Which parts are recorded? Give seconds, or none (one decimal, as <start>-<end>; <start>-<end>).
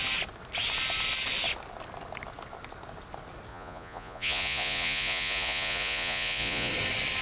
0.0-3.5; 6.7-7.2